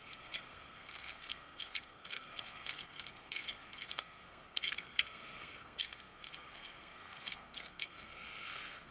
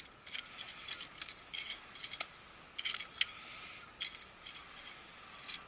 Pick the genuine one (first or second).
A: second